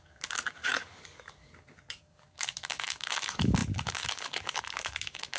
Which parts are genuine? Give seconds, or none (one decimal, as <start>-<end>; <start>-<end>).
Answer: none